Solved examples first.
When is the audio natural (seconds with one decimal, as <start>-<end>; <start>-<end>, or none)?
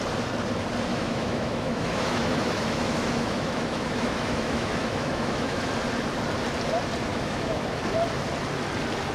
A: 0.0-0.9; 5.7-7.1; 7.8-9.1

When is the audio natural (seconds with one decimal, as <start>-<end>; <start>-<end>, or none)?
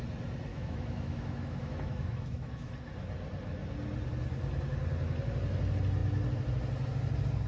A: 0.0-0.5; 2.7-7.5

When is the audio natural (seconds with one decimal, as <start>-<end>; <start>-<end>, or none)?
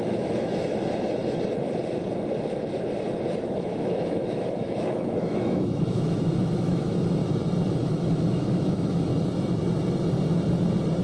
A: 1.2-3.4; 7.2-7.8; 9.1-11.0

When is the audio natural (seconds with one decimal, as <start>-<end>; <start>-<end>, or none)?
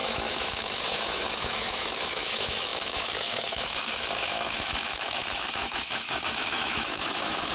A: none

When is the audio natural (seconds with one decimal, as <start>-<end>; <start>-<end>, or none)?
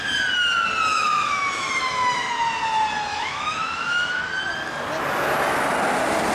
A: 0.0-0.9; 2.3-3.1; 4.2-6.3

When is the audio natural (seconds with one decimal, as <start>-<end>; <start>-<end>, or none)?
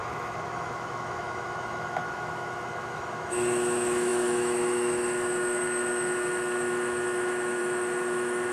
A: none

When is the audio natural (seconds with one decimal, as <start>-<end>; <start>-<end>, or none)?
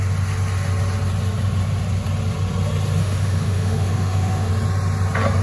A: 0.0-3.0; 4.5-5.4